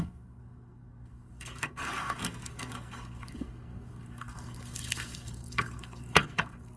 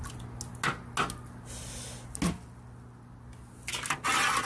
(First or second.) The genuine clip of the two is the second